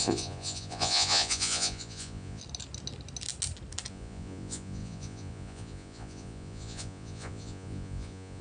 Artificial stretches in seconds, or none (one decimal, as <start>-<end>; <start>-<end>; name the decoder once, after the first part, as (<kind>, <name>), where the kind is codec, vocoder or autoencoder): 0.0-2.4 (vocoder, Vocos); 3.9-8.4